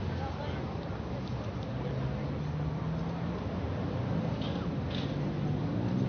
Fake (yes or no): no